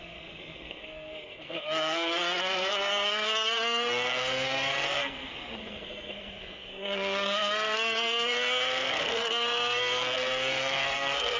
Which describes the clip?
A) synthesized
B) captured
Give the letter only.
A